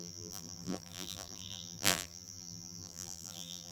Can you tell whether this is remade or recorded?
remade